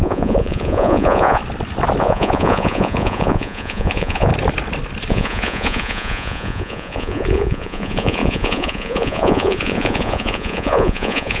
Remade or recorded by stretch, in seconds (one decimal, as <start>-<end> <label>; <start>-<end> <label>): 0.0-1.4 remade; 1.4-2.0 recorded; 2.0-4.3 remade; 4.3-5.1 recorded; 5.1-11.4 remade